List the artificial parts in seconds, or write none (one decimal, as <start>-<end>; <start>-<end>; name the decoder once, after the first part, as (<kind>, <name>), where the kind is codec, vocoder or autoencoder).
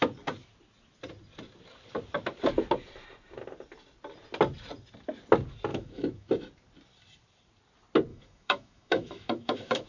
5.7-6.3 (autoencoder, DAC-VAE); 8.1-9.9